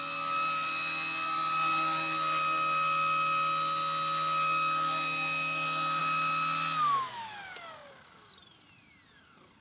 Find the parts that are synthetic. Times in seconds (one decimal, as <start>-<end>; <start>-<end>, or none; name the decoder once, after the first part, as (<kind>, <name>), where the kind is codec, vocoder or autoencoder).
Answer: none